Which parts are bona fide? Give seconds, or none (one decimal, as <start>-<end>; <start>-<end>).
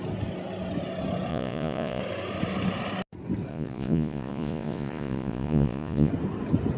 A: 0.0-1.3; 2.0-3.5; 6.1-6.8